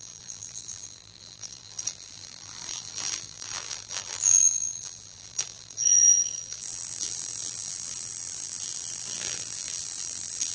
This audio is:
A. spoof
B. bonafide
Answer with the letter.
A